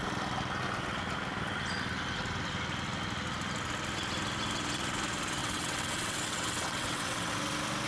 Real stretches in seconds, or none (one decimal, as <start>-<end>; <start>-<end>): 0.0-5.4; 7.3-7.9